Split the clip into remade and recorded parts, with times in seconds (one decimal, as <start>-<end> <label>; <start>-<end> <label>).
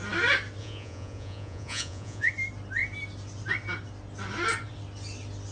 0.0-0.6 recorded; 0.6-2.3 remade; 2.3-5.5 recorded